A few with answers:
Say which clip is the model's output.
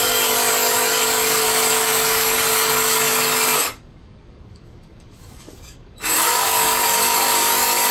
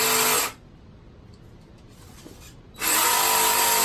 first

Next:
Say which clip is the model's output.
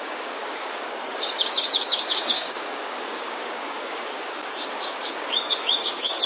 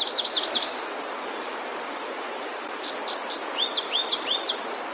first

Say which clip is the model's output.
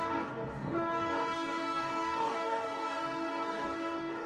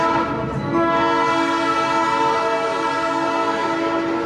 first